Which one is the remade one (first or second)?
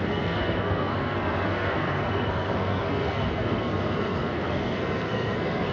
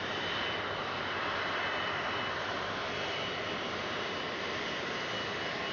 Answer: first